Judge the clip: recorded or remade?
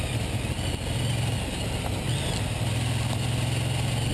recorded